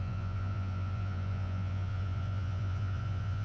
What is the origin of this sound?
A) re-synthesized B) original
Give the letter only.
A